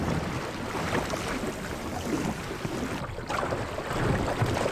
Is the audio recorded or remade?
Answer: recorded